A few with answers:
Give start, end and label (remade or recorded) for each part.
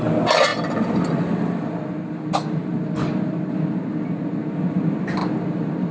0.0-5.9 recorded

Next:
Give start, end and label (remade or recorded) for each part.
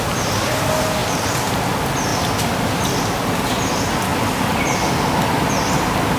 0.0-6.2 recorded